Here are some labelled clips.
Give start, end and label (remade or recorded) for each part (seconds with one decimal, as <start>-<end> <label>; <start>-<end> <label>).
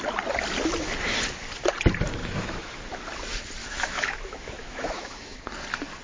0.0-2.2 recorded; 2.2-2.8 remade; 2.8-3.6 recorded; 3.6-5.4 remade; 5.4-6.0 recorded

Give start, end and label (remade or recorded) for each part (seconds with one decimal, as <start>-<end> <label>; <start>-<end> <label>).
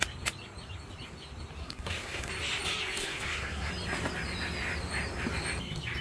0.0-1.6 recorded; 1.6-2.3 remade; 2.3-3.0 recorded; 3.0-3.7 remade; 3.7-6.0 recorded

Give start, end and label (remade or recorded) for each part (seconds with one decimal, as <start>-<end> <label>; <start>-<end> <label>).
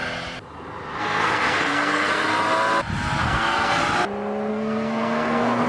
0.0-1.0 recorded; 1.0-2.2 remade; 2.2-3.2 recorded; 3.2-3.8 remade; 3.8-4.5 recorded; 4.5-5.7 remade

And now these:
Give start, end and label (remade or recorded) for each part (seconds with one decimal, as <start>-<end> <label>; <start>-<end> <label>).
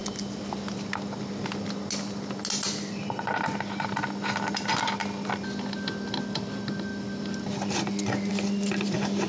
0.0-9.3 recorded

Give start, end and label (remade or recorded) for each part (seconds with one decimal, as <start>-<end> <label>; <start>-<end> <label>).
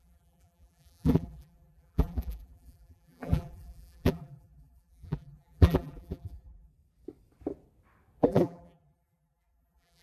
0.0-6.7 remade; 6.7-8.2 recorded; 8.2-10.0 remade